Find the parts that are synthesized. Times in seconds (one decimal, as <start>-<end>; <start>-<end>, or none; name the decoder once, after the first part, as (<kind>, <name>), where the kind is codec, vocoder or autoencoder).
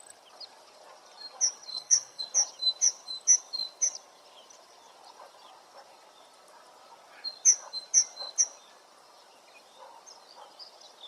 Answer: 1.7-2.2 (codec, SNAC)